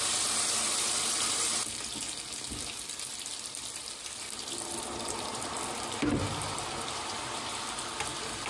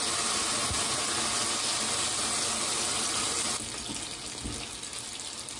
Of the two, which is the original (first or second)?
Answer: second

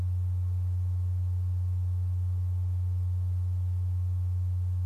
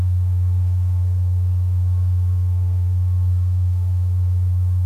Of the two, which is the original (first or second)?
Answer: first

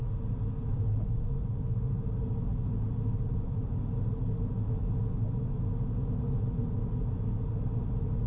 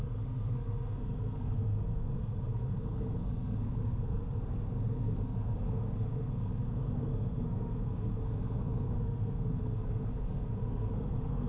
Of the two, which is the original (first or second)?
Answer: first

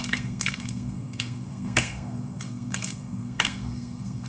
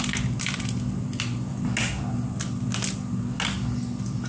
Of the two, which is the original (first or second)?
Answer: second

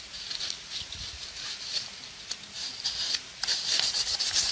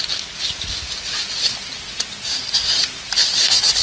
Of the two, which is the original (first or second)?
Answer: second